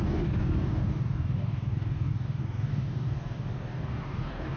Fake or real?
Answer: fake